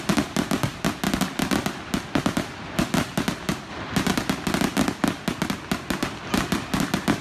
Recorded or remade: recorded